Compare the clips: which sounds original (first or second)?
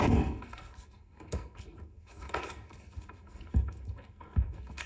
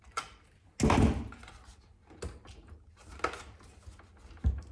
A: second